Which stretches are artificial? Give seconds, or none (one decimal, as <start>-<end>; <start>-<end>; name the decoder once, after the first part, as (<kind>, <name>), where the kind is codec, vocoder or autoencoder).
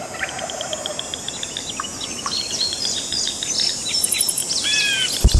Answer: 1.9-3.3 (vocoder, Vocos)